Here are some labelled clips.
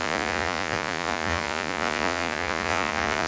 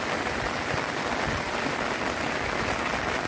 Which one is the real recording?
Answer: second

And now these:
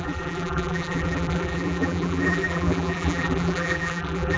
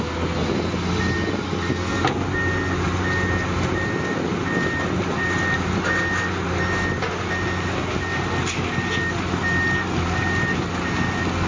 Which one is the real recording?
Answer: second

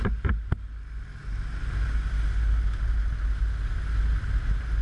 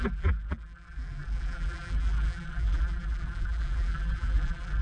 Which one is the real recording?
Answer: first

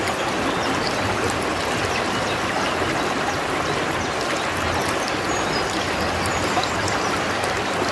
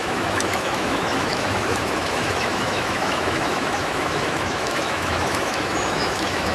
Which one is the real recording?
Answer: first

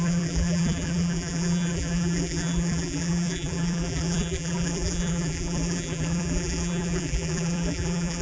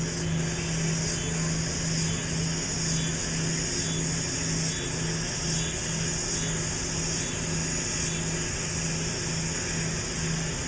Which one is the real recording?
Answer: second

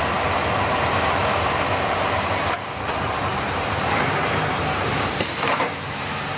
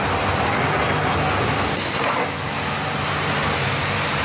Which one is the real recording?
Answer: second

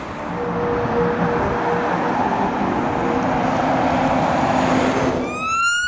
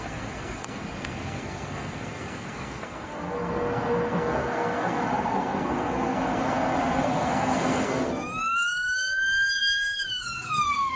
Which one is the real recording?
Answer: first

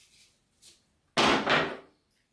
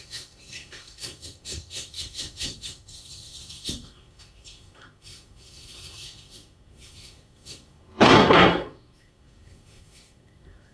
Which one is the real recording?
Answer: first